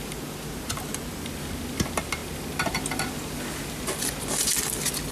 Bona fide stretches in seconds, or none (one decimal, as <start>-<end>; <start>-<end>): 0.0-5.1